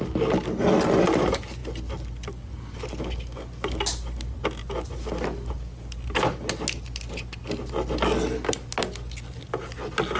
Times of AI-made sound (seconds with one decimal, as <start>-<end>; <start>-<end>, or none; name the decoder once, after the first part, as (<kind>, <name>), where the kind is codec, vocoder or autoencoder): none